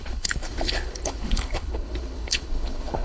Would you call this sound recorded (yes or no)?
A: no